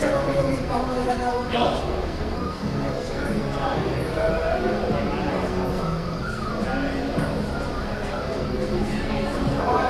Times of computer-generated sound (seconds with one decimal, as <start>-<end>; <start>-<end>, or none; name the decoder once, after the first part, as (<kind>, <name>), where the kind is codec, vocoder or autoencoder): 0.0-4.8 (codec, SNAC); 5.3-6.5; 7.8-9.9